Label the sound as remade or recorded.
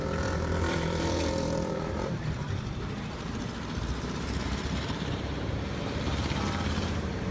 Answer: remade